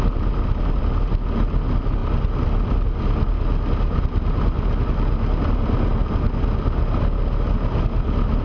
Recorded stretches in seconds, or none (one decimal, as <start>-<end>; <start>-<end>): 0.0-8.4

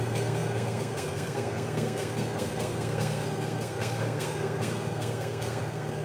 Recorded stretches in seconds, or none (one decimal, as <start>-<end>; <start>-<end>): none

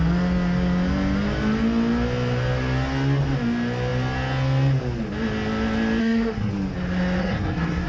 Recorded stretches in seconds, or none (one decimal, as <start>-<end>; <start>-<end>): 0.0-6.0; 6.5-7.2

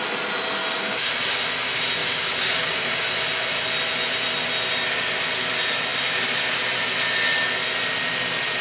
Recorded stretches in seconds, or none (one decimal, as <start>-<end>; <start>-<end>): 0.0-0.6; 1.1-2.0; 3.0-8.6

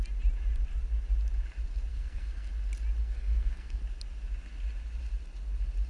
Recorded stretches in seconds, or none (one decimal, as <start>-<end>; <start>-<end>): 0.0-1.9; 2.5-3.0; 3.8-5.9